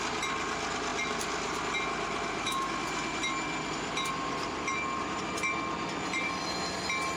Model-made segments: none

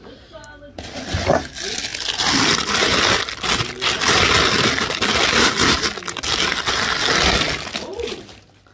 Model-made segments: none

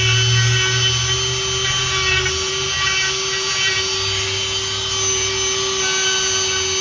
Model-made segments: none

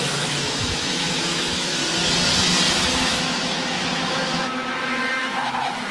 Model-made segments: 0.0-1.8 (autoencoder, DAC-VAE); 2.7-5.9

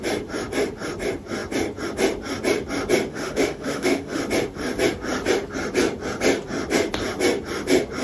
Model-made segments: 3.1-4.2 (autoencoder, DAC-VAE)

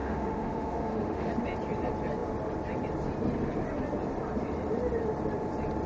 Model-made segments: 0.0-1.3 (autoencoder, DAC-VAE)

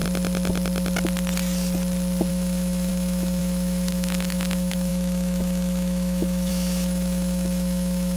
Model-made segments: 2.3-8.2 (autoencoder, DAC-VAE)

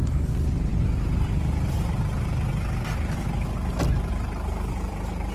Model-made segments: none